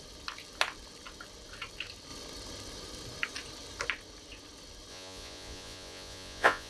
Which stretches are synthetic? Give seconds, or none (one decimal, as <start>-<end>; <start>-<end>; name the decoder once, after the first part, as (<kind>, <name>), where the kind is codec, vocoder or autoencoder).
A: 4.9-6.7 (vocoder, Vocos)